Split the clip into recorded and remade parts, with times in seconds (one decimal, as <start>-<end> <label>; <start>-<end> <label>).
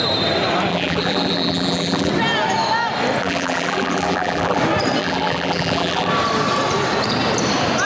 0.0-0.7 recorded; 0.7-2.1 remade; 2.1-3.2 recorded; 3.2-4.6 remade; 4.6-5.0 recorded; 5.0-6.1 remade; 6.1-7.8 recorded